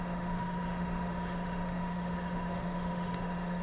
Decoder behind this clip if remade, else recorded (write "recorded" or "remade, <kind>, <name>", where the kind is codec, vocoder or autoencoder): remade, autoencoder, DAC-VAE